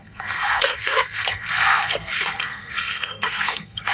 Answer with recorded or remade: remade